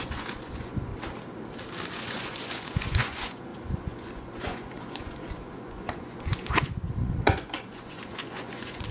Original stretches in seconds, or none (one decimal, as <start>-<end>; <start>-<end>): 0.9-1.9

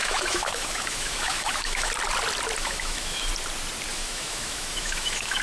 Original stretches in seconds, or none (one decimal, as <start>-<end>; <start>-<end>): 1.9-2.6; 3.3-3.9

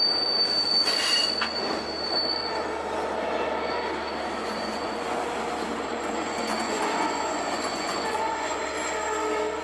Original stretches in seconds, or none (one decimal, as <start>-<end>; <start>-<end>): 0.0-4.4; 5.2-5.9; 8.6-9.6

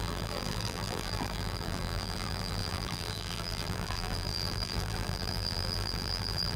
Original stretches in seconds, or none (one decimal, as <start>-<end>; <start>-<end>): none

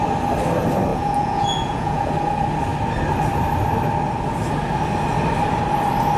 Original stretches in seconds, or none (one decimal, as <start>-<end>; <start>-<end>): 0.0-0.9; 2.1-6.2

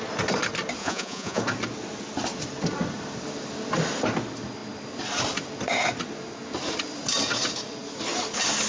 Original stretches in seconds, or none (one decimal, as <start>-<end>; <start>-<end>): 0.0-0.8; 1.4-8.7